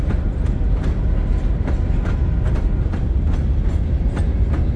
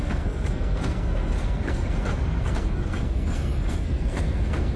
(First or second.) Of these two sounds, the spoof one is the second